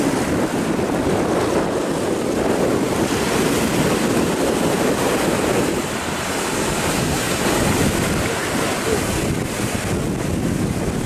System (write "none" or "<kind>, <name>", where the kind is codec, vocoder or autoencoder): none